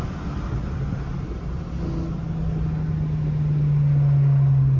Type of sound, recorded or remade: recorded